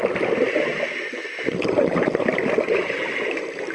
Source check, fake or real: real